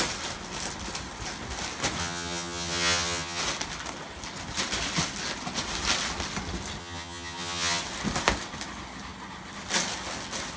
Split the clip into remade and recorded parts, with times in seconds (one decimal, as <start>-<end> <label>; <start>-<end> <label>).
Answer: 0.0-2.0 recorded; 2.0-3.4 remade; 3.4-6.8 recorded; 6.8-7.8 remade; 7.8-10.6 recorded